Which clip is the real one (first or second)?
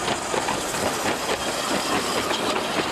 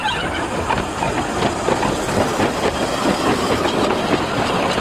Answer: first